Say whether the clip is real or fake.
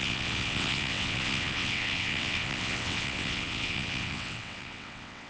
fake